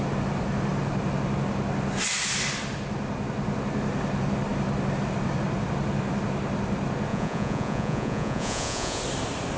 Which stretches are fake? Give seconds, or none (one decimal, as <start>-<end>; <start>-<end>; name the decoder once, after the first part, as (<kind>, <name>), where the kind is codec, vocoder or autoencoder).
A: 7.1-9.0 (vocoder, Vocos)